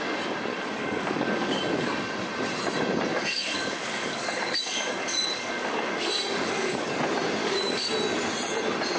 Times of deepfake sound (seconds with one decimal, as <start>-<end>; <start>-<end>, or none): 0.5-1.6; 3.1-6.9; 7.4-7.9